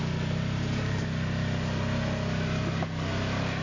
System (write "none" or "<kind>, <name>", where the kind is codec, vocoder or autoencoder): none